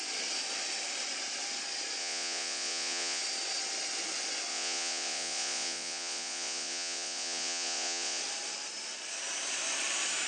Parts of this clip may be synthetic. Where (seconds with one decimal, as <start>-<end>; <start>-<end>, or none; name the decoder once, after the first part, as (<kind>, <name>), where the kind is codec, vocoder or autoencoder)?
2.0-3.2 (vocoder, Vocos); 4.5-8.2